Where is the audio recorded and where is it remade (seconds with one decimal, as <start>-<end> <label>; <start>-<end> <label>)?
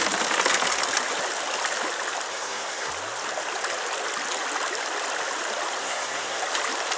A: 0.0-2.3 recorded; 2.3-2.9 remade; 2.9-5.8 recorded; 5.8-6.4 remade; 6.4-7.0 recorded